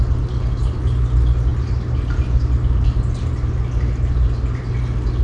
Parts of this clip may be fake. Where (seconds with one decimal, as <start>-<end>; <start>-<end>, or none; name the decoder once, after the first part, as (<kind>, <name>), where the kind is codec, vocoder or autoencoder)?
none